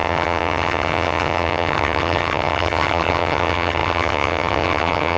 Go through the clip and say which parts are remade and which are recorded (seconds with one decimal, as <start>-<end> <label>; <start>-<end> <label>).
0.0-5.2 remade